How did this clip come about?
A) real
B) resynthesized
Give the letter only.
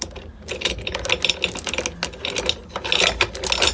A